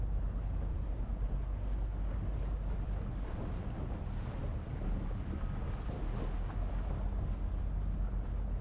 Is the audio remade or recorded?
recorded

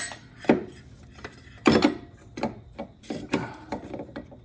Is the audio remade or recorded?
remade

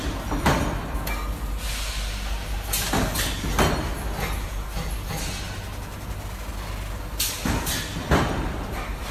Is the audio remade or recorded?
recorded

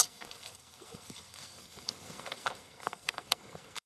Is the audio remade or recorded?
remade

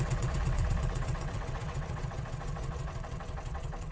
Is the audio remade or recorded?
remade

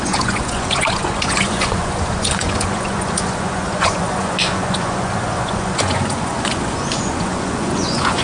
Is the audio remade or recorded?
remade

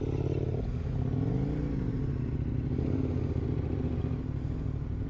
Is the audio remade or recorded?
recorded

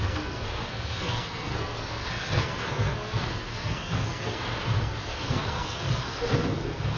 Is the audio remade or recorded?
remade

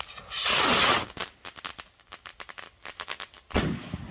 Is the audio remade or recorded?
recorded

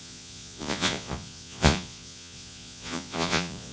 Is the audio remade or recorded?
remade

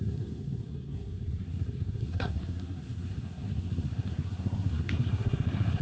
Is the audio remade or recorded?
remade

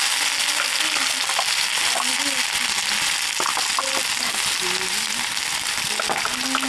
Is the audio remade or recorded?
recorded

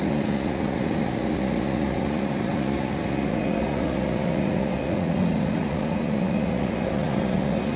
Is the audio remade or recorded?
remade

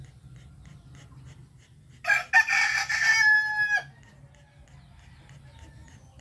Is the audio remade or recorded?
recorded